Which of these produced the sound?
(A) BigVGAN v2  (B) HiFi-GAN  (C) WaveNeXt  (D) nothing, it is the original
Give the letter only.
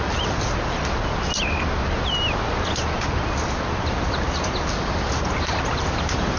D